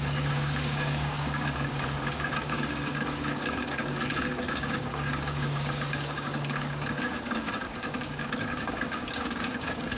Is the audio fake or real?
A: fake